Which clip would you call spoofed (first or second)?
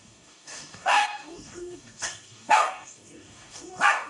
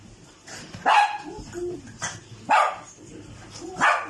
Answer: first